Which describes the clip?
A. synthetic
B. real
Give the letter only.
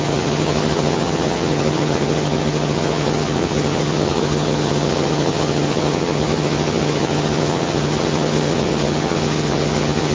A